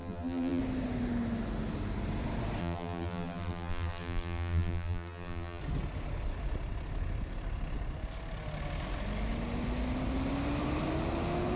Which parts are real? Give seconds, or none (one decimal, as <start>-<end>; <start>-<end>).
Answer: 0.6-2.6; 5.6-11.6